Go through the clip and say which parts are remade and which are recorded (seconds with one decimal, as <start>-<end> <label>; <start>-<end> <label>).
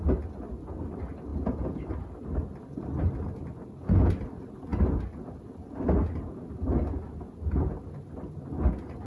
0.0-1.3 recorded; 1.3-1.8 remade; 1.8-9.1 recorded